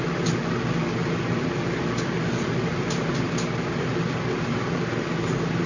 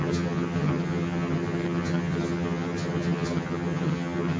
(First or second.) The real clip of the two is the first